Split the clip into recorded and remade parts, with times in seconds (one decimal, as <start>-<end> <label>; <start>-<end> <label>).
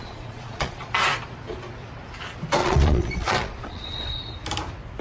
0.0-0.9 remade; 0.9-2.6 recorded; 2.6-4.2 remade; 4.2-5.0 recorded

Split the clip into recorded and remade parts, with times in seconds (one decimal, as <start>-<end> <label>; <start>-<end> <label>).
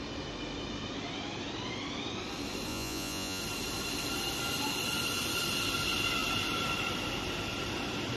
0.0-2.7 recorded; 2.7-3.4 remade; 3.4-8.2 recorded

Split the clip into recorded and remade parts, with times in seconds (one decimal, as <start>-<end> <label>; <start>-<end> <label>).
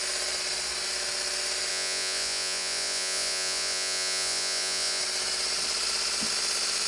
0.0-1.7 recorded; 1.7-5.0 remade; 5.0-6.9 recorded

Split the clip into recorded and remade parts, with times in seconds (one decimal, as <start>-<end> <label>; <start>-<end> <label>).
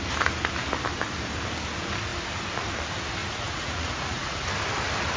0.0-3.2 recorded; 3.2-4.5 remade; 4.5-5.2 recorded